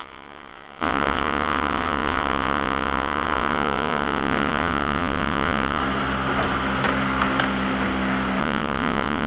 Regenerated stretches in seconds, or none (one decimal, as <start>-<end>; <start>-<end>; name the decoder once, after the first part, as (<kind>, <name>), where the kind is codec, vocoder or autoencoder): 0.0-5.8 (vocoder, WaveNeXt); 8.4-9.3